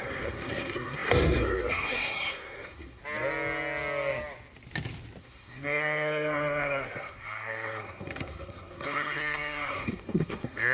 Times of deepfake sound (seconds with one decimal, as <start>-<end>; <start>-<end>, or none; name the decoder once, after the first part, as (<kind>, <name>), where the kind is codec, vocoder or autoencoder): 0.0-3.0 (codec, SNAC); 5.2-10.7